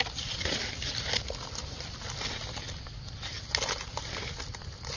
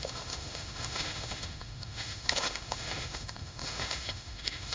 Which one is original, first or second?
first